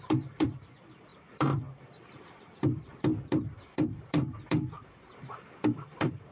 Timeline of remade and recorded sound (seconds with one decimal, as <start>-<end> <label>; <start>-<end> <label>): 0.0-6.3 remade